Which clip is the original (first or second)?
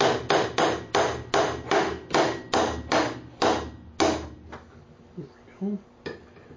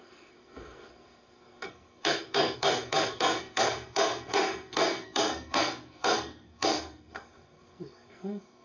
first